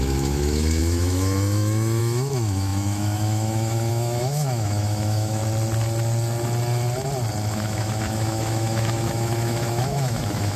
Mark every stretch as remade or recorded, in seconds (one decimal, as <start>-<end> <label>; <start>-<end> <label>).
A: 0.0-5.4 remade; 5.4-7.5 recorded; 7.5-10.6 remade